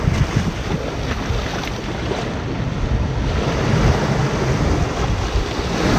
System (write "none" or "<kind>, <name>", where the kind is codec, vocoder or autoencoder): none